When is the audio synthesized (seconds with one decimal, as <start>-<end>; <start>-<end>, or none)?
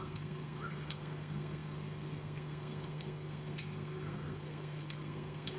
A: 0.0-5.6